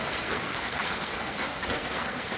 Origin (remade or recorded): remade